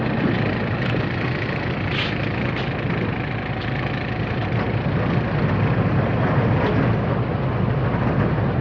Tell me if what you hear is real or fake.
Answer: real